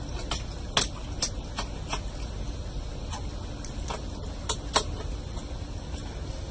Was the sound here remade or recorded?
recorded